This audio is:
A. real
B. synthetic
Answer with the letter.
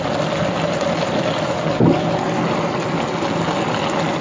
A